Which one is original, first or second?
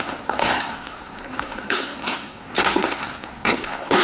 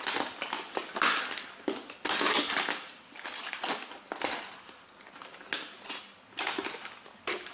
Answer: second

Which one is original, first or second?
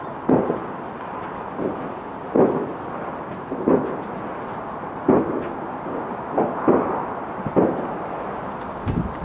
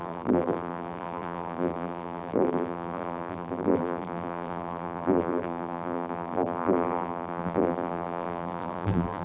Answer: first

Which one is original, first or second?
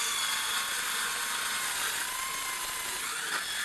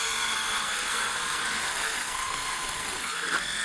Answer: first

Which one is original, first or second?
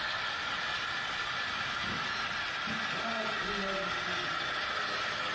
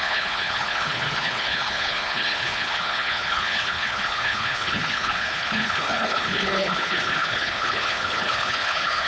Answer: first